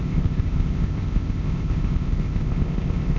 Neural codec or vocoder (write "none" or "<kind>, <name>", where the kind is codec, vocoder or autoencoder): codec, ZipCodec